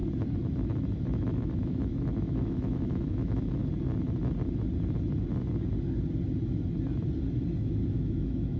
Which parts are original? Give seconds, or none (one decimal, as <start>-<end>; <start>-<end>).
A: 0.0-1.0; 3.6-7.6